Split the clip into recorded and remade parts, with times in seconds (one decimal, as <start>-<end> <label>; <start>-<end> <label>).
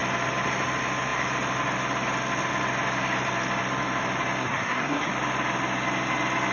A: 0.0-4.4 recorded; 4.4-5.1 remade; 5.1-6.5 recorded